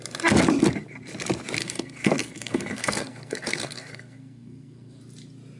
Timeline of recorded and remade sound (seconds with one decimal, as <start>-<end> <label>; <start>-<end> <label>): 0.0-1.6 recorded; 1.6-5.0 remade; 5.0-5.6 recorded